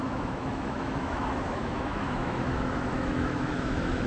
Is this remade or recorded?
remade